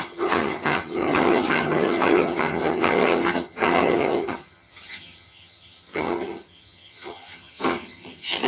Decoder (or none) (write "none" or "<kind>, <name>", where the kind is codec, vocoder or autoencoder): vocoder, HiFi-GAN